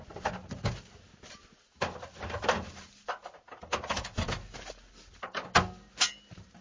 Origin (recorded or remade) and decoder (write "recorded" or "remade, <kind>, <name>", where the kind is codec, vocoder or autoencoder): recorded